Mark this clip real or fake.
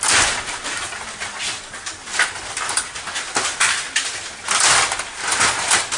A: real